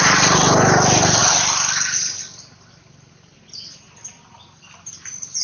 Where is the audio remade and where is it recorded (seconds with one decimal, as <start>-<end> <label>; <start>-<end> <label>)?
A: 0.0-5.4 recorded